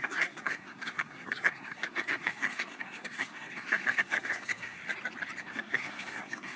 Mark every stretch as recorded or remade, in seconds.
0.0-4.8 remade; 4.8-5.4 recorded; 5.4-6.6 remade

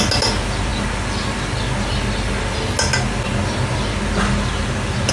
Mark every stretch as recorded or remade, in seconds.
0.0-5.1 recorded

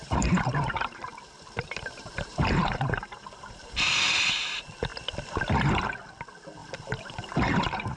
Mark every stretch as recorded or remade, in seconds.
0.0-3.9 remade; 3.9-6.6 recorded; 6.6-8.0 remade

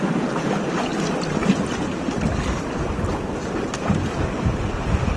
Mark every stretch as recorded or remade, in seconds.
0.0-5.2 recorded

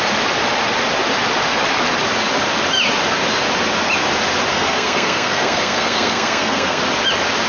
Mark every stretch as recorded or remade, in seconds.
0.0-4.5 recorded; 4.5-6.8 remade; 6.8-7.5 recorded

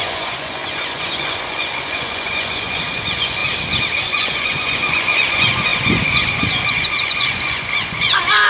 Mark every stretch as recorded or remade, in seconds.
0.0-3.4 remade; 3.4-4.0 recorded; 4.0-8.5 remade

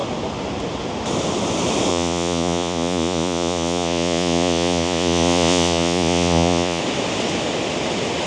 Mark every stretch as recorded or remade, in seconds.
0.0-1.9 recorded; 1.9-6.8 remade; 6.8-8.3 recorded

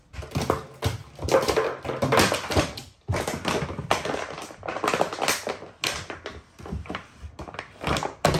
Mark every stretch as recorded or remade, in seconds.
0.0-8.4 recorded